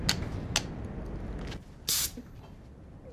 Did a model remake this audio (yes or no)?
no